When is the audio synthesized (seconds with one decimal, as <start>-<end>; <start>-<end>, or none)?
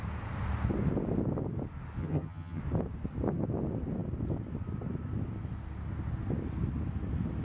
2.0-2.6